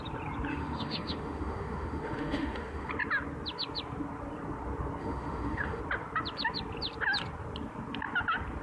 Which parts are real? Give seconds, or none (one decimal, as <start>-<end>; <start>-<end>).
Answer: 0.0-0.5; 2.9-5.0; 5.8-8.6